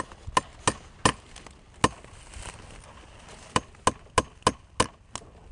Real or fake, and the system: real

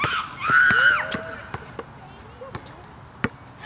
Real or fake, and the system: real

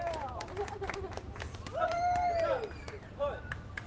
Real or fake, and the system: fake, vocoder, BigVGAN v2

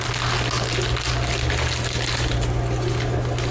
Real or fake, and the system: real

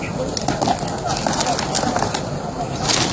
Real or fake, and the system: real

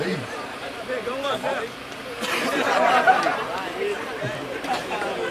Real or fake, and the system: fake, vocoder, BigVGAN v2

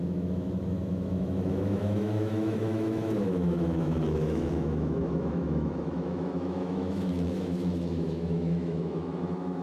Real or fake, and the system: fake, autoencoder, DAC-VAE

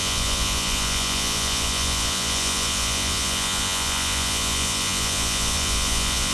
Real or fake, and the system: fake, vocoder, Vocos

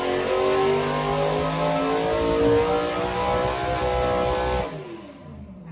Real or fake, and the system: real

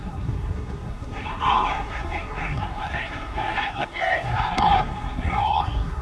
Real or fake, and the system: fake, codec, SNAC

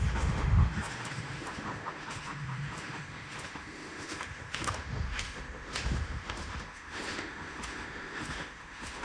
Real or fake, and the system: fake, autoencoder, DAC-VAE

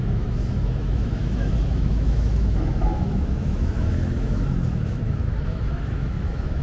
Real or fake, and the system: fake, autoencoder, DAC-VAE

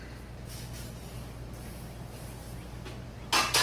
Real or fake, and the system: real